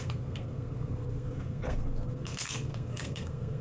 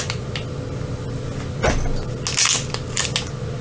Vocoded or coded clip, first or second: first